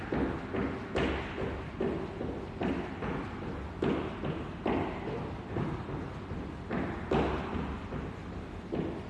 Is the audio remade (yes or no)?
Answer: no